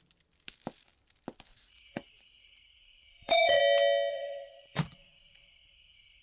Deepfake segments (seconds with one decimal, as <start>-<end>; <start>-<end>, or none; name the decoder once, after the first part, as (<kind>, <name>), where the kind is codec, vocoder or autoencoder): 1.5-3.6 (vocoder, Vocos); 4.1-6.2